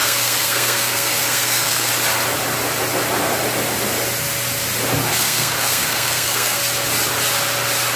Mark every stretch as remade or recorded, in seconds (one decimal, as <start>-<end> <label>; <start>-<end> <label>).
0.0-1.9 remade; 1.9-5.1 recorded; 5.1-6.6 remade; 6.6-8.0 recorded